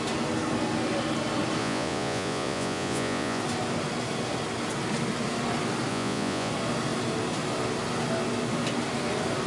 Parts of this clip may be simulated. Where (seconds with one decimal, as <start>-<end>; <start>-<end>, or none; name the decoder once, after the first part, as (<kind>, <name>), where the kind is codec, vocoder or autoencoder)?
1.6-3.4 (vocoder, Vocos); 5.9-6.5